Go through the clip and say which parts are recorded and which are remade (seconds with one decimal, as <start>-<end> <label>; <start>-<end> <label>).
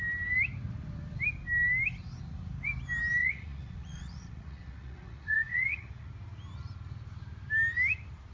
0.0-3.2 recorded; 3.2-6.1 remade; 6.1-8.3 recorded